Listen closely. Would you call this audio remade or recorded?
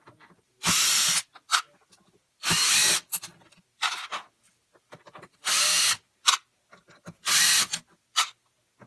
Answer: recorded